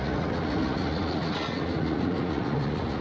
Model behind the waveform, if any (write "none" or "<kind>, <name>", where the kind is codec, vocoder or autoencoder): vocoder, Vocos